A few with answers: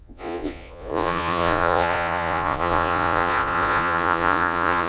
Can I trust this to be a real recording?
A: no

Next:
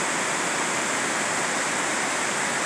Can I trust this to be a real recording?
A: yes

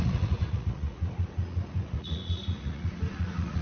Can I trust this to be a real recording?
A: no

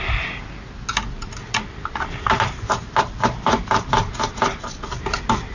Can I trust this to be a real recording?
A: yes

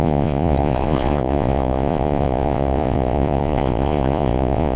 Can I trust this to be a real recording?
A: no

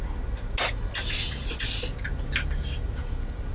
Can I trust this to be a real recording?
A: yes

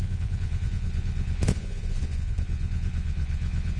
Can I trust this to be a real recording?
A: no